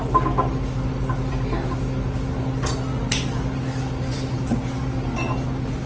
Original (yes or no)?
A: yes